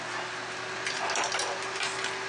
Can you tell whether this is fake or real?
real